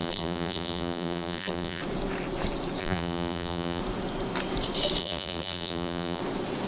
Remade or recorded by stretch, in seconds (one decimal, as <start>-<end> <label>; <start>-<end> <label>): 0.0-1.8 remade; 1.8-2.8 recorded; 2.8-3.8 remade; 3.8-5.0 recorded; 5.0-6.2 remade; 6.2-6.7 recorded

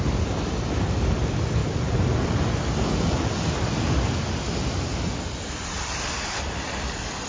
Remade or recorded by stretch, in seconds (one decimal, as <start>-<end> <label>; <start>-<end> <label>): 0.0-7.3 recorded

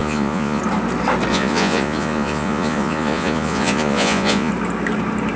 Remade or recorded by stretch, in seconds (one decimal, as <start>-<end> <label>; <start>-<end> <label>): 0.0-0.6 remade; 0.6-1.3 recorded; 1.3-4.5 remade; 4.5-5.4 recorded

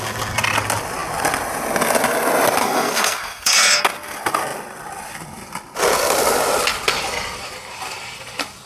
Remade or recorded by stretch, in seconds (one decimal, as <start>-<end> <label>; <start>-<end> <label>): 0.0-2.6 recorded; 2.6-3.8 remade; 3.8-8.7 recorded